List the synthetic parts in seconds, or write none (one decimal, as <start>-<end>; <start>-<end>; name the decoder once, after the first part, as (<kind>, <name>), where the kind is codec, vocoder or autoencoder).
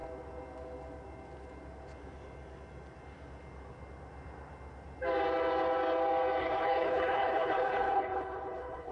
6.4-8.9 (codec, HILCodec)